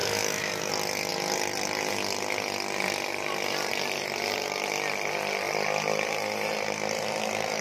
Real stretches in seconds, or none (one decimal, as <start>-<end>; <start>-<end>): 0.7-7.6